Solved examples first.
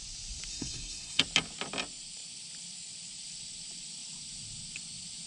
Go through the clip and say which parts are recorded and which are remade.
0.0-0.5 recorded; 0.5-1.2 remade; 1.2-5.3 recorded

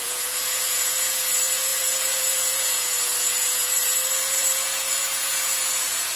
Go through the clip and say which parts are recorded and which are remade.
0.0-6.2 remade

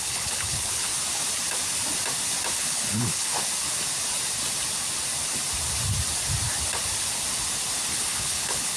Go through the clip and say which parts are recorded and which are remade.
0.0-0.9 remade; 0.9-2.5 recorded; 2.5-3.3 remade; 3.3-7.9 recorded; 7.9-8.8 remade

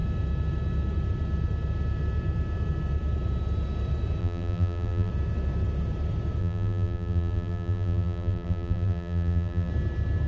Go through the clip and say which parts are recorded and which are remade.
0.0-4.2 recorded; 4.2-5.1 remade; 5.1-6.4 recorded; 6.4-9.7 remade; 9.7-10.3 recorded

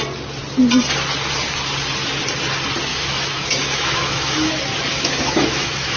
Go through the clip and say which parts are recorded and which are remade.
0.0-2.9 recorded; 2.9-4.5 remade; 4.5-4.9 recorded; 4.9-6.0 remade